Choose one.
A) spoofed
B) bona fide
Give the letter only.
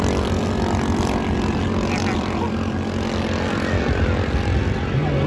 B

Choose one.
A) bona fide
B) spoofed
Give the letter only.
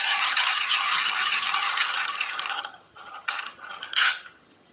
B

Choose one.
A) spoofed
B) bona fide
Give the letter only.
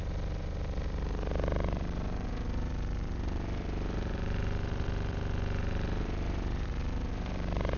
A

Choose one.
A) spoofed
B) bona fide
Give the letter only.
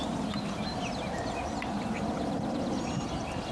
B